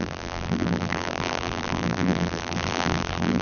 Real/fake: fake